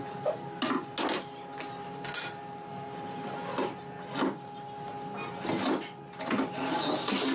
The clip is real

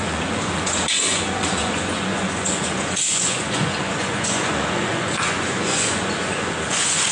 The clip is fake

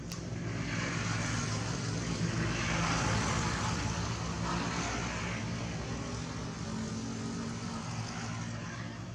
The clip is real